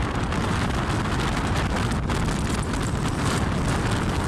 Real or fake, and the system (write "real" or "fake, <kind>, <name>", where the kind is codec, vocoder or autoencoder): real